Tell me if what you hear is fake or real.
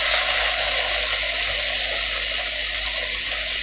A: real